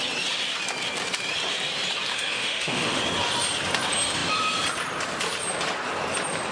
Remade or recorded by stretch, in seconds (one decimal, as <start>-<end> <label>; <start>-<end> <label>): 0.0-2.1 recorded; 2.1-3.0 remade; 3.0-6.5 recorded

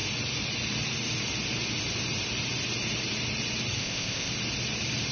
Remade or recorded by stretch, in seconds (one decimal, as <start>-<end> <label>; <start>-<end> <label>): 0.0-3.8 recorded; 3.8-4.3 remade; 4.3-5.1 recorded

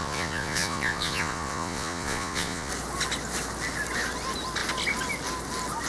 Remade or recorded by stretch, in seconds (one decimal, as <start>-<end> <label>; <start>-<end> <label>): 0.0-2.7 remade; 2.7-5.9 recorded